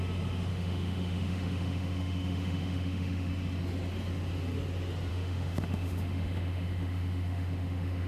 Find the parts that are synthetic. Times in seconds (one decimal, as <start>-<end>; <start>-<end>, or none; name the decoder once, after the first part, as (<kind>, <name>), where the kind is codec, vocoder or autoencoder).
0.5-3.3 (autoencoder, DAC-VAE); 5.1-8.1